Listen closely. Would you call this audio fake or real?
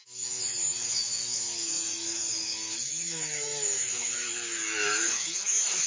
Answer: fake